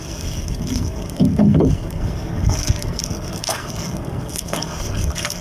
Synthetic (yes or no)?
yes